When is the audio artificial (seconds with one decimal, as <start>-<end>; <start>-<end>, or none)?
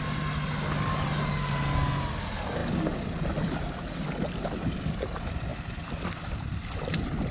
none